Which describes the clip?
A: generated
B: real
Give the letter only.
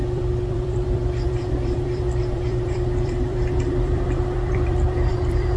A